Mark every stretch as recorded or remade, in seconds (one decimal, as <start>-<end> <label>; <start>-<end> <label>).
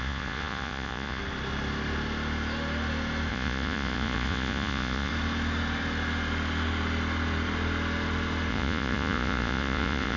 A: 0.0-1.2 remade; 1.2-3.3 recorded; 3.3-5.1 remade; 5.1-8.5 recorded; 8.5-10.2 remade